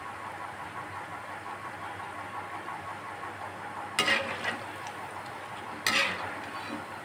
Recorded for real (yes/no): yes